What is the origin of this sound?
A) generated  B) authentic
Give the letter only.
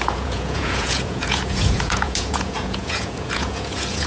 A